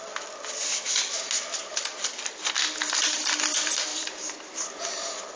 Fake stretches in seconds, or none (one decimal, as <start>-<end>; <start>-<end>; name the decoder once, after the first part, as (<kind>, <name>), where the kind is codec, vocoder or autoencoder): 3.9-4.8 (vocoder, BigVGAN v2)